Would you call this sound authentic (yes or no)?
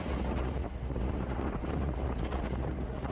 no